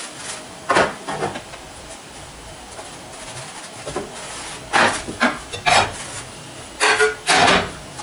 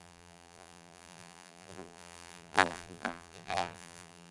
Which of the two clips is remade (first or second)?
second